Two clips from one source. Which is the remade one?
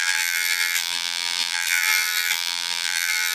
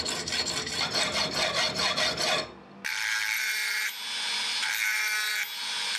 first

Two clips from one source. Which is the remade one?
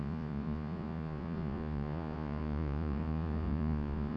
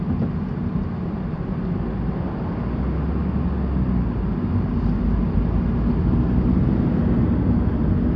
first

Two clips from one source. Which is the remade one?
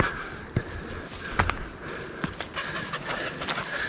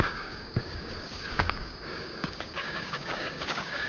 second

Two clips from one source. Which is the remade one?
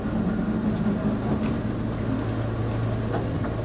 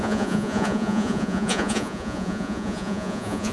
second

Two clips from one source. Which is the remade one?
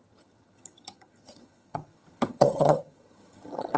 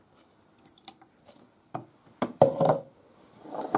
first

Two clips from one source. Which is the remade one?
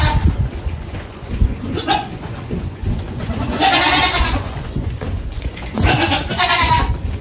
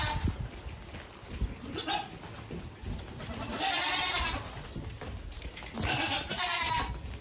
first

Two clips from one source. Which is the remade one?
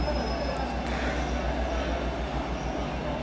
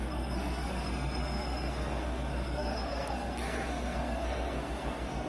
second